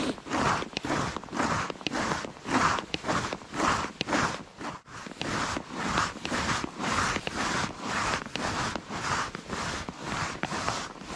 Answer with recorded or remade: recorded